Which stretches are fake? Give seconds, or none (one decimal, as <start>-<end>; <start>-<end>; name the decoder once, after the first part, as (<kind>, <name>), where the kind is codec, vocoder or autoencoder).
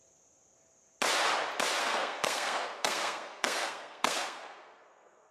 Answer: 1.8-5.3 (codec, SNAC)